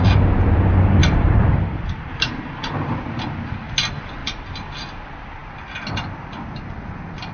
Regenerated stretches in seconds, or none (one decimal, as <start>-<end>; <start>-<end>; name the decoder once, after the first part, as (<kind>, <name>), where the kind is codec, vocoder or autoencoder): 1.0-3.2 (vocoder, BigVGAN v2); 4.2-4.7